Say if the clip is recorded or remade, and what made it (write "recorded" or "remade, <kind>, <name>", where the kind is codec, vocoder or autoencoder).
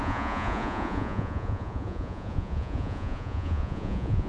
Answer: remade, vocoder, Vocos